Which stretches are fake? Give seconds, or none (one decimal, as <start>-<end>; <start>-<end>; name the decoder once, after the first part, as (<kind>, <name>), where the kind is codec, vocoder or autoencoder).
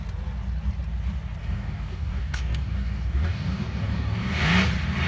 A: 1.4-4.5 (codec, DAC)